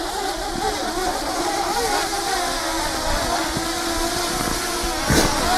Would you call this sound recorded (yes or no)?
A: yes